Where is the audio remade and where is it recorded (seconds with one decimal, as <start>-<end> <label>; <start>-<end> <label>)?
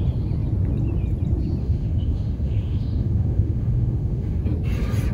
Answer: 0.0-1.6 recorded; 1.6-4.4 remade; 4.4-5.1 recorded